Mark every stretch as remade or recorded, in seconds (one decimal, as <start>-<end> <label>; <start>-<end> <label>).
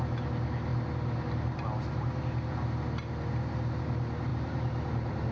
0.0-5.3 recorded